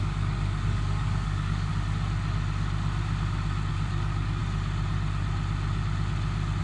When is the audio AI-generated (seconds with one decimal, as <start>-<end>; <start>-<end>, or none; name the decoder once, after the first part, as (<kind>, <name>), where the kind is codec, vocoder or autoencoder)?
0.0-1.7 (codec, DAC); 3.7-4.4